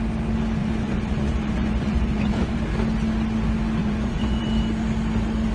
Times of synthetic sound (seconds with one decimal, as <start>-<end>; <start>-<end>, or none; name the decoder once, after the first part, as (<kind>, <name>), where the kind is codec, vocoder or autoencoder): 0.6-2.6 (vocoder, Vocos); 3.8-4.4